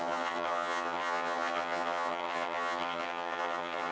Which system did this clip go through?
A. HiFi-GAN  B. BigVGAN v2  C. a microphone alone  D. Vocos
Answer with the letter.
A